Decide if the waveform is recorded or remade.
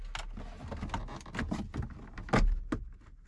recorded